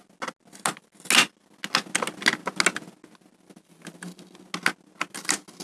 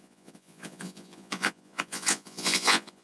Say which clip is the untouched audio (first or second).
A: first